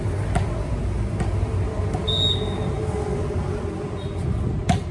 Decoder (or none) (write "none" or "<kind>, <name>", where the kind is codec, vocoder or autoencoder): none